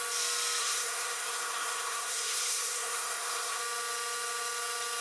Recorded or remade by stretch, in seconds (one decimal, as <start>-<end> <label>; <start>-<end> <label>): 0.0-0.6 recorded; 0.6-3.6 remade; 3.6-5.0 recorded